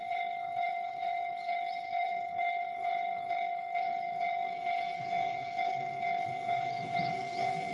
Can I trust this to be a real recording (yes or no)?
no